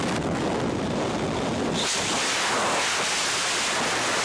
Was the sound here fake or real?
real